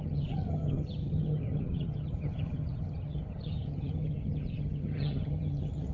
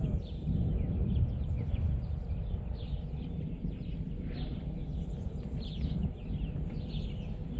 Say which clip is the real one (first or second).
second